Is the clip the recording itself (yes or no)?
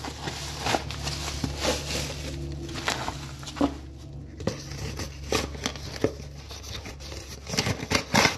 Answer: yes